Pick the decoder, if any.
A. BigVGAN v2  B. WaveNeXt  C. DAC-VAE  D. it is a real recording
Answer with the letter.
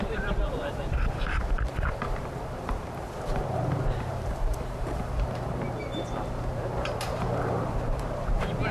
A